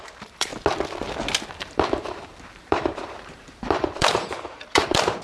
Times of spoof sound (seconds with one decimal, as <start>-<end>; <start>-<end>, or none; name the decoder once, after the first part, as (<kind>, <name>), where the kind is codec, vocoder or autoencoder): 0.0-0.5 (vocoder, BigVGAN v2); 1.6-5.2